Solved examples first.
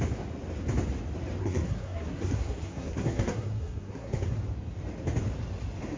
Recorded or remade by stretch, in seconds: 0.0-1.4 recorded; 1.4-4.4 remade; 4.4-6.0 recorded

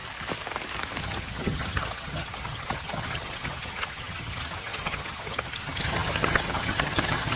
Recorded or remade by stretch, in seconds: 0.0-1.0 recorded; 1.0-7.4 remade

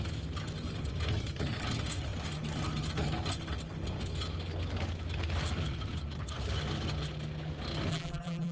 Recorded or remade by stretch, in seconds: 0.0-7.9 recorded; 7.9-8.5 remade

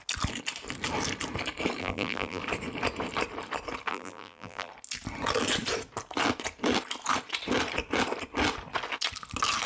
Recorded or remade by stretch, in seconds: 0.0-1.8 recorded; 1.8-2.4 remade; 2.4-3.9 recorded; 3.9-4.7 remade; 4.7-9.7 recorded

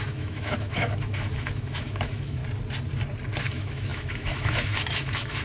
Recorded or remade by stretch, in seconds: 0.0-2.4 remade; 2.4-3.4 recorded; 3.4-5.4 remade